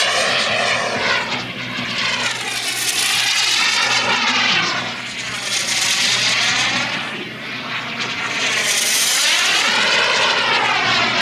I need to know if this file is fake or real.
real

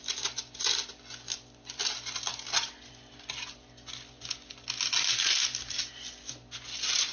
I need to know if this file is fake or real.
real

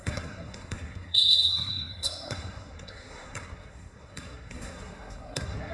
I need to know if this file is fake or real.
fake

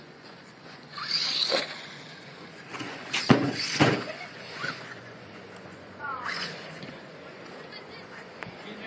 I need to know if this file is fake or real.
fake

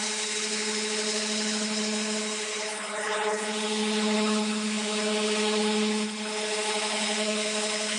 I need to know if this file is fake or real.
fake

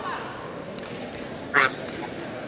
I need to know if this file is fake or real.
real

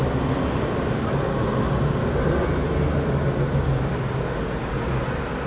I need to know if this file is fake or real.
real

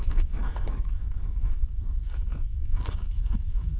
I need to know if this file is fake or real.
fake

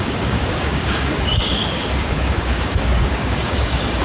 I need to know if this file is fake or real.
fake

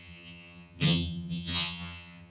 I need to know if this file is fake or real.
fake